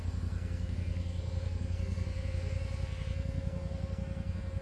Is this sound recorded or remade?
remade